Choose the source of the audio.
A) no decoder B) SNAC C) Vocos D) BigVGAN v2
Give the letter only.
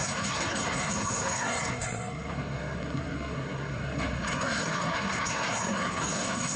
B